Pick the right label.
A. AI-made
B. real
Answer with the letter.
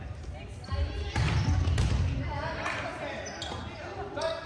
B